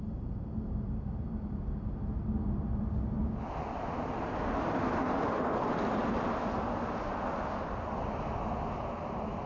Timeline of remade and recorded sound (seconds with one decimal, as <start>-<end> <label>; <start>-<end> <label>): 0.0-9.5 recorded